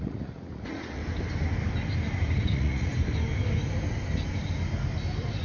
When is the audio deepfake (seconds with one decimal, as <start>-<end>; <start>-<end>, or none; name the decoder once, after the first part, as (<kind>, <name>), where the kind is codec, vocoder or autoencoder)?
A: 0.0-1.0 (vocoder, Vocos); 2.5-2.9